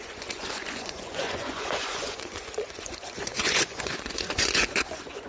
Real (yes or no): no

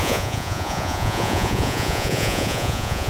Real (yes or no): no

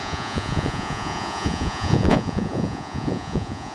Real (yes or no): no